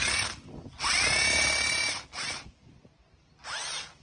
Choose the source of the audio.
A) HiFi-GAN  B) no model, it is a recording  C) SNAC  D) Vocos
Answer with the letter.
B